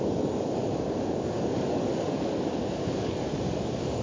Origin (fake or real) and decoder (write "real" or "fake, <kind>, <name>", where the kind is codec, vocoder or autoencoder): fake, codec, DAC